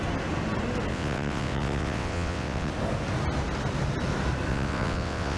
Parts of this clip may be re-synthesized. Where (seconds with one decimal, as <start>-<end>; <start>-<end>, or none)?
0.9-2.7; 4.5-5.4